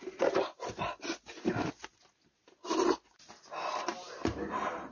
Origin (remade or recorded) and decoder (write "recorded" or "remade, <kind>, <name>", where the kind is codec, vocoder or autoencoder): recorded